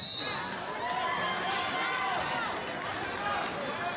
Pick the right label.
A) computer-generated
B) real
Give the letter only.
B